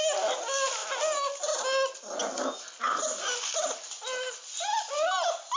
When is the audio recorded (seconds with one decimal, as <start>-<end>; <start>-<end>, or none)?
0.0-5.6